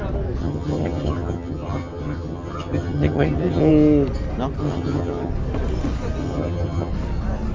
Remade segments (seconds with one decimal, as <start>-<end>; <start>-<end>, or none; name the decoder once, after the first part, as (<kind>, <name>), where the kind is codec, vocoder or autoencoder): 0.4-3.7 (vocoder, HiFi-GAN); 4.6-5.3; 6.2-6.9